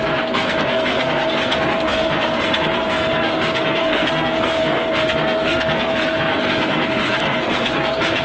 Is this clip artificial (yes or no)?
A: yes